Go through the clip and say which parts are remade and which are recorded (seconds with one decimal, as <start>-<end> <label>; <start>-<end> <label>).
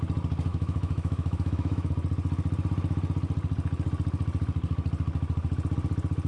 0.0-0.5 recorded; 0.5-1.9 remade; 1.9-6.3 recorded